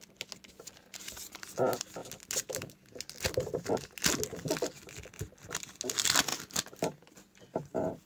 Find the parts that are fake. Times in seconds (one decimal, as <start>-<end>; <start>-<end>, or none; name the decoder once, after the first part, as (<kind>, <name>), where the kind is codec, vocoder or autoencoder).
none